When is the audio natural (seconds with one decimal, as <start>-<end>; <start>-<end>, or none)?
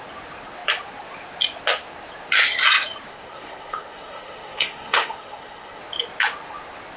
0.0-3.1; 5.8-7.0